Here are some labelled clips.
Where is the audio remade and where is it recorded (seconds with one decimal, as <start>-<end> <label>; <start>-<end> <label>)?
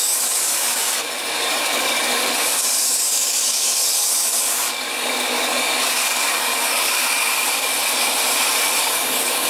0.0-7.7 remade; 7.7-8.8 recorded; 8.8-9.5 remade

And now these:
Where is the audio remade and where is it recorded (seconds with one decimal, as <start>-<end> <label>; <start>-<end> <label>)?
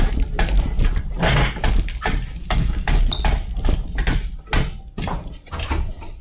0.0-2.4 recorded; 2.4-3.0 remade; 3.0-6.2 recorded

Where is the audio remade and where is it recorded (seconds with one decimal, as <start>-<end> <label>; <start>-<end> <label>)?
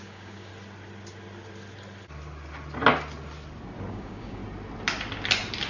0.0-0.5 remade; 0.5-3.9 recorded; 3.9-4.4 remade; 4.4-5.7 recorded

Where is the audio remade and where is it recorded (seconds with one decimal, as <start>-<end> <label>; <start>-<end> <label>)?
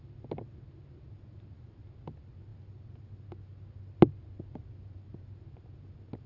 0.0-6.3 recorded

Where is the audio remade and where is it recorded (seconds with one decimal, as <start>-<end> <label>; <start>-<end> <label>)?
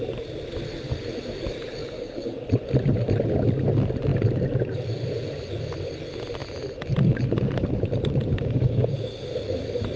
0.0-1.8 recorded; 1.8-2.5 remade; 2.5-8.3 recorded; 8.3-8.9 remade; 8.9-10.0 recorded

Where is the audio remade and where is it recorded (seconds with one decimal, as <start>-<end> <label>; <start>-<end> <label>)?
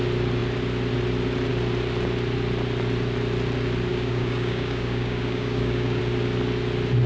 0.0-3.9 recorded; 3.9-6.0 remade; 6.0-7.1 recorded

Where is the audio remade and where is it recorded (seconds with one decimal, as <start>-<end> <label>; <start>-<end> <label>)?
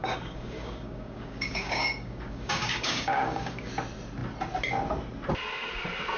0.0-3.7 remade; 3.7-6.2 recorded